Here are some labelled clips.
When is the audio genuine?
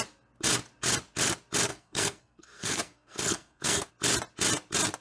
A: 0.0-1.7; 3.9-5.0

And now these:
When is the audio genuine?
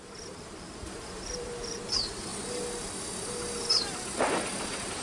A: 2.3-3.7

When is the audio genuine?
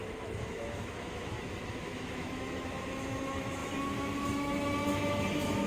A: none